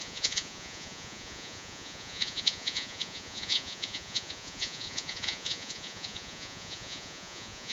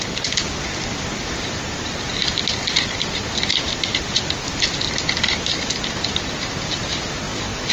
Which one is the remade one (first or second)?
first